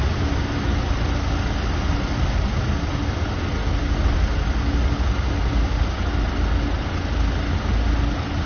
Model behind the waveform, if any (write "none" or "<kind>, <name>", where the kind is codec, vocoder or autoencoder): none